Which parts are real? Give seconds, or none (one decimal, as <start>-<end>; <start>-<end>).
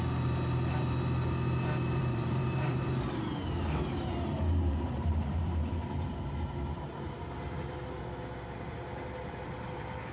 0.0-2.0; 5.9-10.1